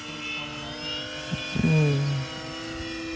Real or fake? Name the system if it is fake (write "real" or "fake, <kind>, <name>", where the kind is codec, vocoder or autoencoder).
real